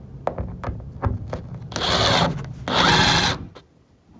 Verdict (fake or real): real